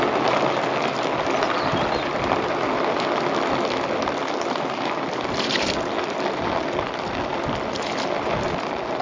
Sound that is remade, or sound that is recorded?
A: recorded